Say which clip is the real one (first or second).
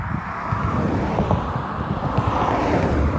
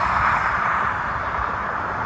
second